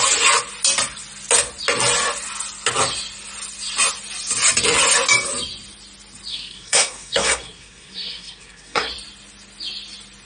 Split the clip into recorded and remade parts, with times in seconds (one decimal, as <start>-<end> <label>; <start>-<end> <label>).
0.0-6.3 recorded; 6.3-8.9 remade; 8.9-10.2 recorded